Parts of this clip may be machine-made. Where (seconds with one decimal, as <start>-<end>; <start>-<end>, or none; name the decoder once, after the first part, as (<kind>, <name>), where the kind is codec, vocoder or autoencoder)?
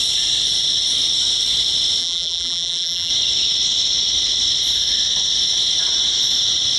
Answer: 2.0-3.1 (vocoder, BigVGAN v2)